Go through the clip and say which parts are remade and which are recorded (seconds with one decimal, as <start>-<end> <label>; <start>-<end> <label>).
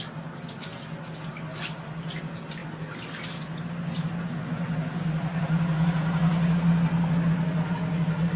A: 0.0-8.4 recorded